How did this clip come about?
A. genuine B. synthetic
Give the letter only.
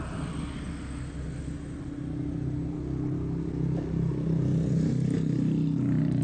A